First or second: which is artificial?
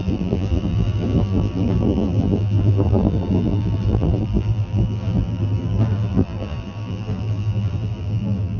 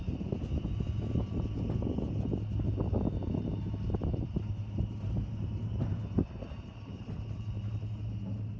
first